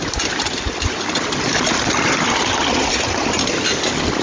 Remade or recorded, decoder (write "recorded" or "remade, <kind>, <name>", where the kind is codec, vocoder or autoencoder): recorded